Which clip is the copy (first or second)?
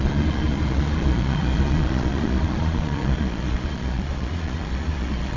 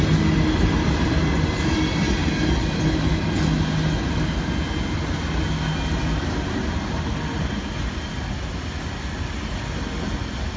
first